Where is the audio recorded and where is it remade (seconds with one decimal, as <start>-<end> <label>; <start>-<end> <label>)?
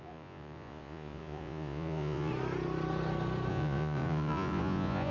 0.0-2.3 remade; 2.3-3.5 recorded; 3.5-5.1 remade